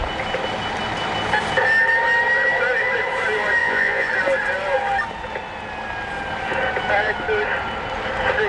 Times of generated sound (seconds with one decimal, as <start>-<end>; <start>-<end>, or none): 3.6-4.1